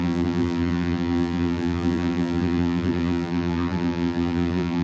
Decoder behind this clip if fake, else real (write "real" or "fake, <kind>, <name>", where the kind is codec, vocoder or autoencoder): fake, vocoder, BigVGAN v2